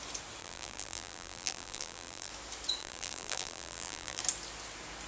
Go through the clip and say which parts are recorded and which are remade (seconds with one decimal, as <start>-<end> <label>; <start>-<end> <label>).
0.0-0.4 recorded; 0.4-2.3 remade; 2.3-2.8 recorded; 2.8-4.2 remade; 4.2-5.1 recorded